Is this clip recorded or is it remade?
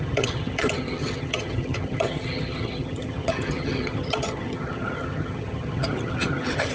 remade